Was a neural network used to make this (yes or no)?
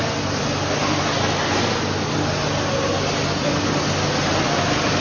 no